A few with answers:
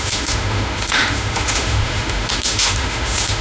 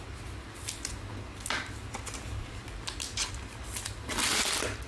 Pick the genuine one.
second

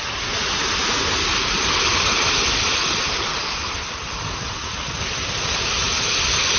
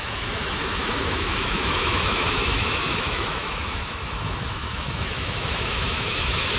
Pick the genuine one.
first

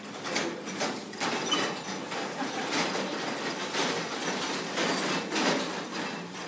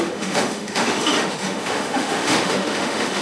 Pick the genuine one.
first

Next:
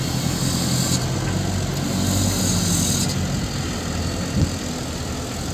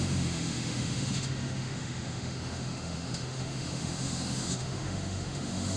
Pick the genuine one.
first